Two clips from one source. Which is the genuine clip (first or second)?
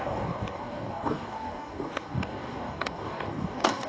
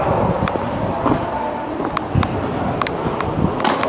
second